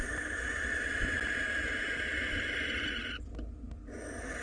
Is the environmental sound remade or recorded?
recorded